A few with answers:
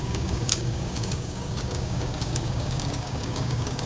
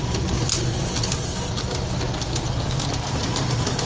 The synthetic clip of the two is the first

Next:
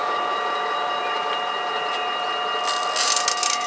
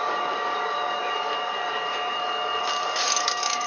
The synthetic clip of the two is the second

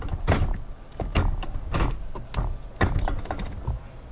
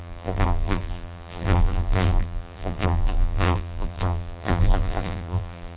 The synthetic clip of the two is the second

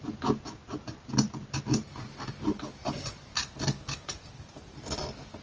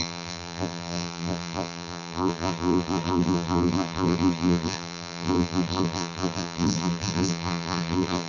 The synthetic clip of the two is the second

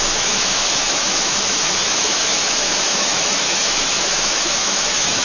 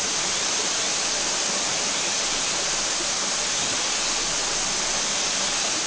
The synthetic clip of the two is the first